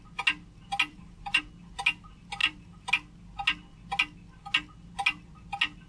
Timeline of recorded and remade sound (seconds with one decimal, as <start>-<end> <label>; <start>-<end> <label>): 0.0-0.9 recorded; 0.9-1.4 remade; 1.4-2.4 recorded; 2.4-2.9 remade; 2.9-5.9 recorded